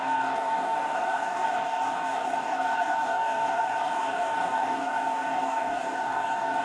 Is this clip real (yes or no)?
no